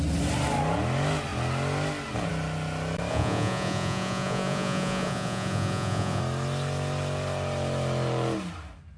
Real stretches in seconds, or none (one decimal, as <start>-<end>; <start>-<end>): 0.0-3.1; 6.2-9.0